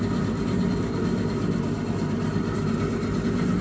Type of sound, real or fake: real